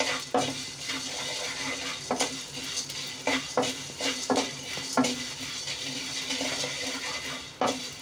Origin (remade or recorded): recorded